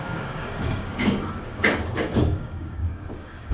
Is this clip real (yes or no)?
no